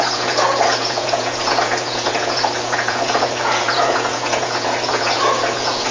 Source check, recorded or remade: remade